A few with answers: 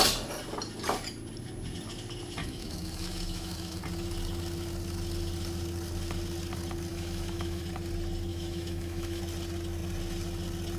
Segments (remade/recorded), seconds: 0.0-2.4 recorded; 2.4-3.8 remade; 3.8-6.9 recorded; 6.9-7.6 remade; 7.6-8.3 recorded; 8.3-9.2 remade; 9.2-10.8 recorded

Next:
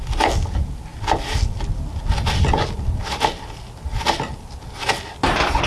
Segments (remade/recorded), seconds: 0.0-5.7 recorded

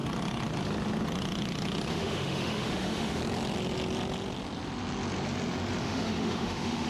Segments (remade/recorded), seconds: 0.0-1.9 recorded; 1.9-3.2 remade; 3.2-5.8 recorded; 5.8-6.9 remade